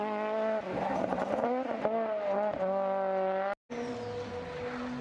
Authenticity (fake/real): real